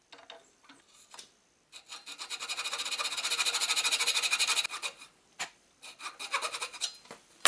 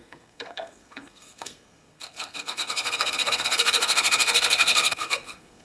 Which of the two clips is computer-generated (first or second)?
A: second